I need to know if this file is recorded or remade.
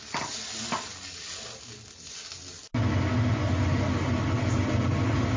recorded